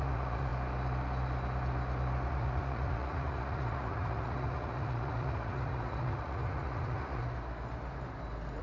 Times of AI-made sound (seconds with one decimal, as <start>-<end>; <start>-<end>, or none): 0.0-0.5; 2.3-7.2